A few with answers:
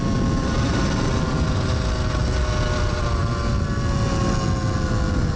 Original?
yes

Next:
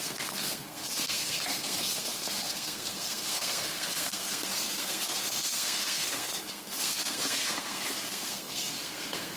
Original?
no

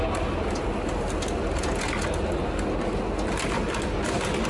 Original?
yes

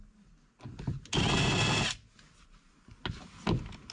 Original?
yes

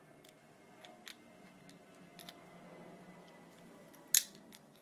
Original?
yes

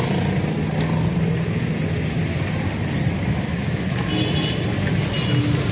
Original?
yes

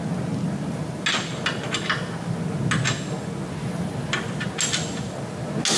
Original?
yes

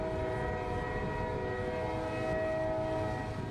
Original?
yes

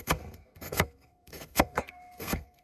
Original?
no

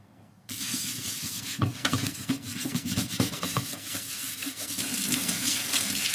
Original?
no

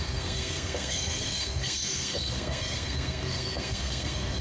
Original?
no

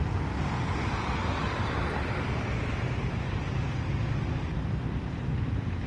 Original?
yes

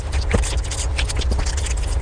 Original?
yes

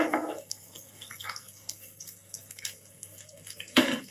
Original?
no